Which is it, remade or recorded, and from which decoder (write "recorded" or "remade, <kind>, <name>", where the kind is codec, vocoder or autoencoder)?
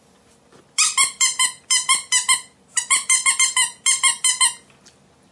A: recorded